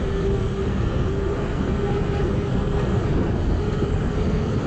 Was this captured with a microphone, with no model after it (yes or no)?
no